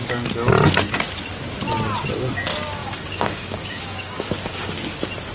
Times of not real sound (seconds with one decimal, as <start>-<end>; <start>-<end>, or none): 2.8-4.3